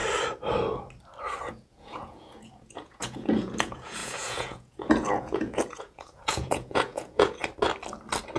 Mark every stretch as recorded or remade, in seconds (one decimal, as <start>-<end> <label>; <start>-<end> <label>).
0.0-1.5 recorded; 1.5-7.4 remade; 7.4-8.4 recorded